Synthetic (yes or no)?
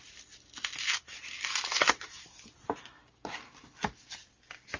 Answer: no